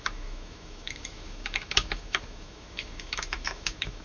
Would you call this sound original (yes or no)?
no